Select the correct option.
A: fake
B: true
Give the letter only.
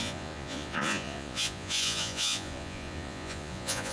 A